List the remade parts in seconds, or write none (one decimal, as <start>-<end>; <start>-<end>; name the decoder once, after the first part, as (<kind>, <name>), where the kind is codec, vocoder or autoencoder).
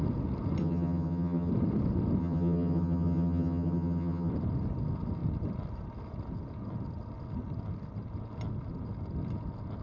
0.6-1.5 (vocoder, HiFi-GAN); 2.2-4.3